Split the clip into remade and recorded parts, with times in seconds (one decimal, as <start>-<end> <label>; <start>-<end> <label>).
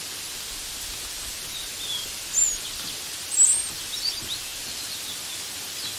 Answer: 0.0-6.0 recorded